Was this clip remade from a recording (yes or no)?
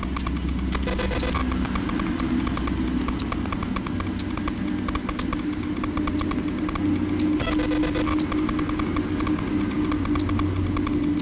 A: no